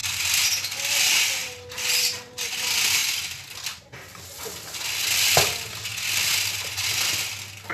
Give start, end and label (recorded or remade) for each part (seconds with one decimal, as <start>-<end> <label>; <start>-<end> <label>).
0.0-1.4 recorded; 1.4-2.3 remade; 2.3-7.7 recorded